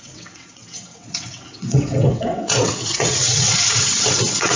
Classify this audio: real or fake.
fake